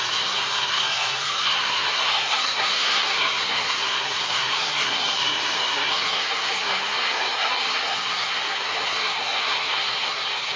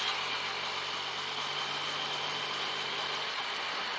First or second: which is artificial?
first